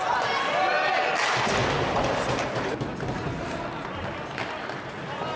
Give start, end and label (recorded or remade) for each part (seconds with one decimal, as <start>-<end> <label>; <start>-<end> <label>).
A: 0.0-1.6 recorded; 1.6-2.7 remade; 2.7-5.4 recorded